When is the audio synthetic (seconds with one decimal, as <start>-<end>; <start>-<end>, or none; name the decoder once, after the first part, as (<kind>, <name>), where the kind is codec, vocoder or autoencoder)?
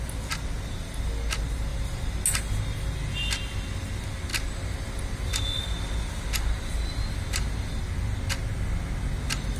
none